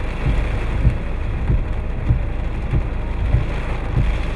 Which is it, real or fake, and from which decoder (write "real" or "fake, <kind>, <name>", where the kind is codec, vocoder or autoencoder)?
real